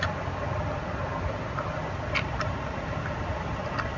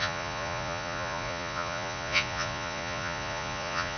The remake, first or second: second